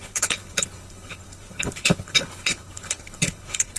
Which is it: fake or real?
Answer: fake